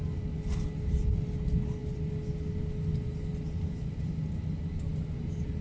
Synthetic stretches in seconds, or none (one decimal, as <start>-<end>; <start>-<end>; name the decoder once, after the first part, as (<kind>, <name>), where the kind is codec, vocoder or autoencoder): none